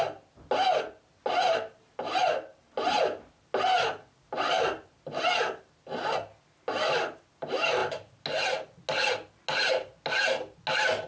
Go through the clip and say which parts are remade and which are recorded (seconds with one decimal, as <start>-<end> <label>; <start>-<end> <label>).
0.0-11.1 recorded